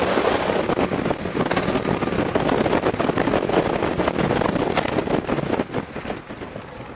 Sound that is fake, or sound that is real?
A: real